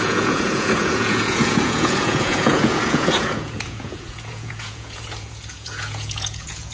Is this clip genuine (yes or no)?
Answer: no